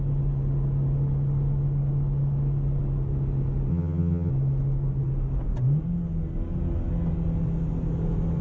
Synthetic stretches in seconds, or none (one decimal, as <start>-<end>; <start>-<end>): 3.7-4.3